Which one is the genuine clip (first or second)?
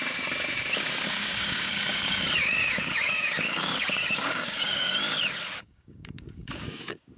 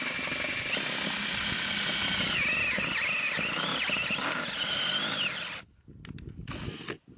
second